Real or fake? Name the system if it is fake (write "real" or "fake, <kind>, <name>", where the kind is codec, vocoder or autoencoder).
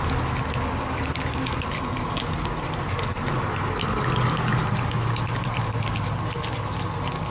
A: real